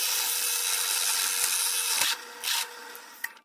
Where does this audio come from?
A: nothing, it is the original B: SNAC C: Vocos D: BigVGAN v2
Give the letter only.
A